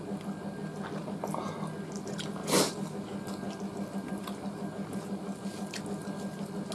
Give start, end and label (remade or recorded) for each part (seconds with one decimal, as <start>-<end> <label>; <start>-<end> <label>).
0.0-6.7 recorded